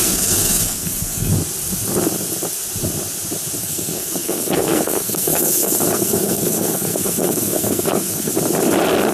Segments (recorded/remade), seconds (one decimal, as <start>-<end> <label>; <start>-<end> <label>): 0.0-1.3 remade; 1.3-3.6 recorded; 3.6-8.3 remade; 8.3-9.1 recorded